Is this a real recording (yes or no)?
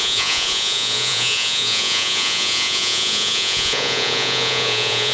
no